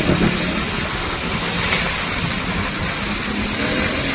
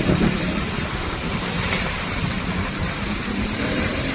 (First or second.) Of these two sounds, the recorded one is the first